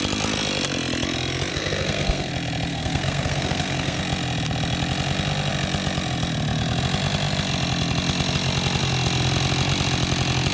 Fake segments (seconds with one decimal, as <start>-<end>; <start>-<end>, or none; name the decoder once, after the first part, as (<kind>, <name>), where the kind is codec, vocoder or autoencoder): 1.5-2.3 (codec, SNAC); 2.7-4.0